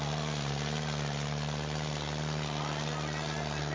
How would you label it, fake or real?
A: real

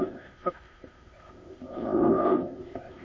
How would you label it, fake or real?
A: fake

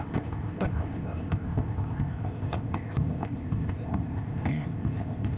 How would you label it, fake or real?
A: fake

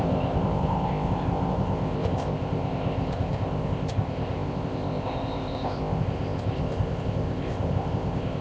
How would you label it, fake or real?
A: fake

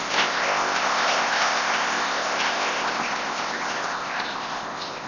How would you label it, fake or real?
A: fake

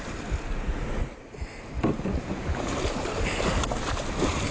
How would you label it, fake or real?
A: real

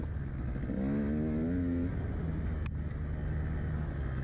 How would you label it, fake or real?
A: real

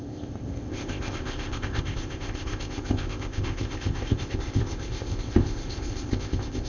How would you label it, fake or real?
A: fake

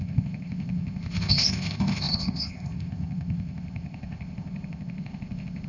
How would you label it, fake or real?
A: fake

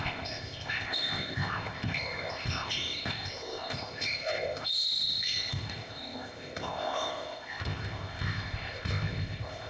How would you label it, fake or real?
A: fake